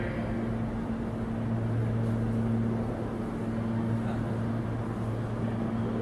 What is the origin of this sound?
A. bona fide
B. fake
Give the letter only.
A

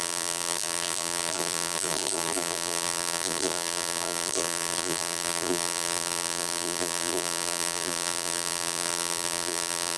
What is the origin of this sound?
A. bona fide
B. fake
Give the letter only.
B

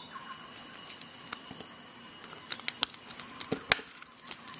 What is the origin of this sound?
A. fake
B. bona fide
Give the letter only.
B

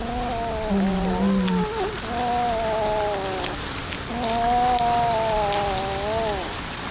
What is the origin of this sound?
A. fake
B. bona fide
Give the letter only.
B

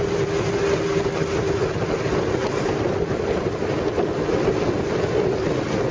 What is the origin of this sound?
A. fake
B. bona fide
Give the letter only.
B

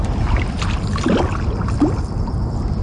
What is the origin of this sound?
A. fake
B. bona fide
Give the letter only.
B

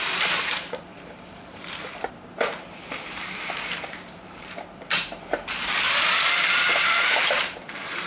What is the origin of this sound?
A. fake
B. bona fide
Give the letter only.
A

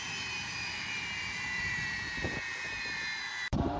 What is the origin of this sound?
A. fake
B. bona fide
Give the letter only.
A